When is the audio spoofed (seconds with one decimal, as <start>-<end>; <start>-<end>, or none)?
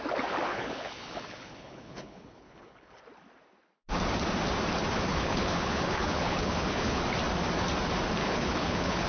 0.5-3.0; 5.1-7.0; 8.2-9.1